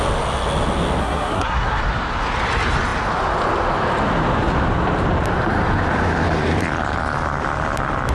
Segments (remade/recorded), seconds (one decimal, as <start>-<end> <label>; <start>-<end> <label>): 0.0-1.0 recorded; 1.0-1.8 remade; 1.8-8.1 recorded